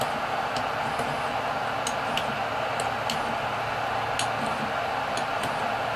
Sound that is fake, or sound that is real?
real